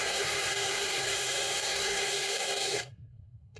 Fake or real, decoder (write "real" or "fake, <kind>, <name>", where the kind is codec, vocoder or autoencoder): fake, codec, SNAC